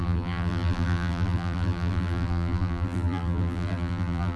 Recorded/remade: remade